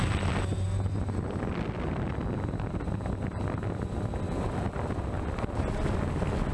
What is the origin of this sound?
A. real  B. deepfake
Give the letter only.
A